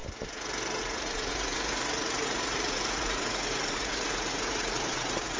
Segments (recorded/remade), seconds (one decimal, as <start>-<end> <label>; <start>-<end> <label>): 0.0-0.8 recorded; 0.8-5.4 remade